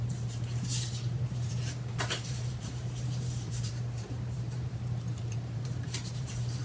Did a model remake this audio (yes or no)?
yes